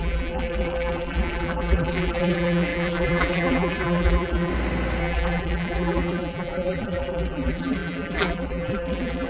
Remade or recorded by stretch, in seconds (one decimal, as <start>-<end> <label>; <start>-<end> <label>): 0.0-4.5 remade; 4.5-5.0 recorded; 5.0-9.3 remade